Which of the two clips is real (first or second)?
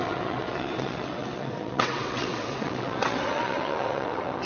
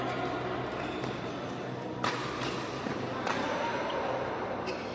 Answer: second